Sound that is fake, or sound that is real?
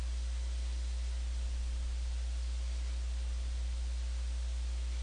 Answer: real